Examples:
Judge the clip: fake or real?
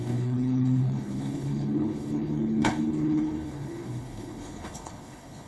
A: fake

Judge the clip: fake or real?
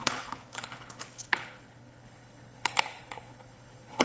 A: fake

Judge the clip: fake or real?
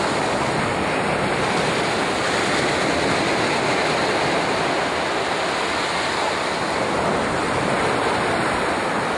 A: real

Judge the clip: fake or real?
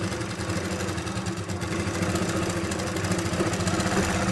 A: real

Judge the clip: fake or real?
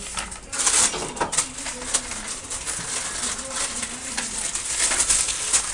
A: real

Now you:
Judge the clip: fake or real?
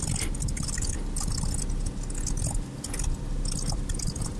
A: real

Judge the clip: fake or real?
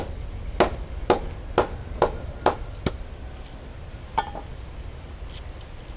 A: real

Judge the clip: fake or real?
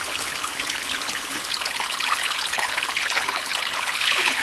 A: fake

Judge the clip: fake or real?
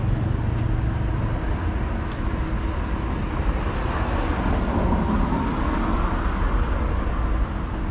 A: real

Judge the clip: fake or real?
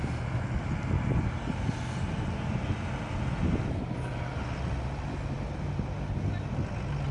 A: real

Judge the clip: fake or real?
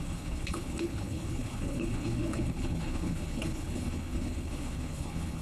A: fake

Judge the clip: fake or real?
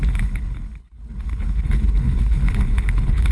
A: fake